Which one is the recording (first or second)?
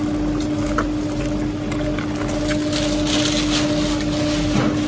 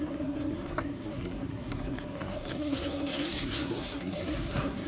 first